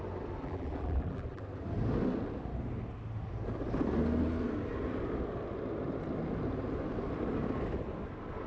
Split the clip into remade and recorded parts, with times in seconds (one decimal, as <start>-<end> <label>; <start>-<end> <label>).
0.0-0.4 recorded; 0.4-1.4 remade; 1.4-8.5 recorded